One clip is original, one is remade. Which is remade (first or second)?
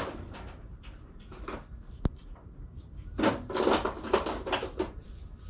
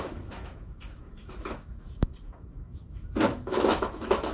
second